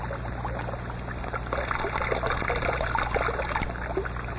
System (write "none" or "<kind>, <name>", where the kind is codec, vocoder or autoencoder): none